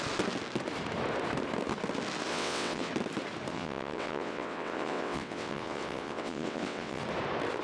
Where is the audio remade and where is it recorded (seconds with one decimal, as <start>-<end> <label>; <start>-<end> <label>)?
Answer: 0.0-2.3 recorded; 2.3-2.9 remade; 2.9-3.5 recorded; 3.5-7.0 remade; 7.0-7.6 recorded